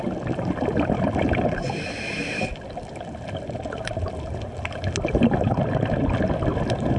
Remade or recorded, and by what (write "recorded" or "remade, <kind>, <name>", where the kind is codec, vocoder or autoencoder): recorded